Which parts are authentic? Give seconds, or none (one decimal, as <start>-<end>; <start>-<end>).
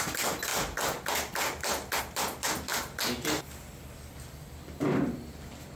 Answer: 0.0-5.8